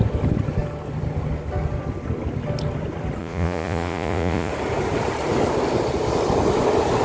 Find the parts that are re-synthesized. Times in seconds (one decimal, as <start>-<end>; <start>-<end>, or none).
3.2-4.5